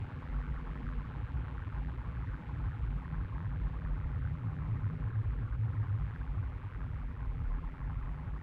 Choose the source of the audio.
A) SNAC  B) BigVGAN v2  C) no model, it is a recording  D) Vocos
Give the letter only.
B